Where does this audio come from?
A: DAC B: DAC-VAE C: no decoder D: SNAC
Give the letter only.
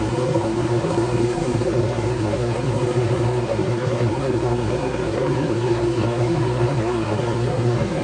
D